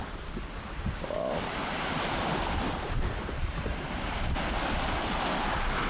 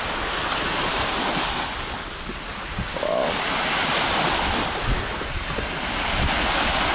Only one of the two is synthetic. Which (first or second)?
first